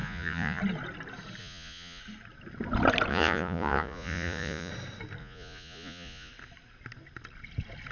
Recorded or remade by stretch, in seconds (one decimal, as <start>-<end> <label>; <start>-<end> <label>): 0.0-0.6 remade; 0.6-1.4 recorded; 1.4-2.0 remade; 2.0-3.1 recorded; 3.1-4.7 remade; 4.7-5.2 recorded; 5.2-6.3 remade; 6.3-7.9 recorded